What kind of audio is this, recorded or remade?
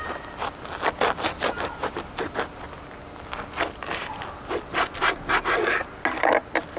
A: recorded